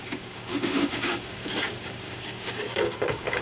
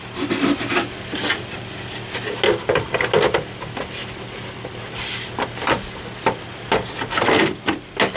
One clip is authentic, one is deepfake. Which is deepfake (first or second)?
first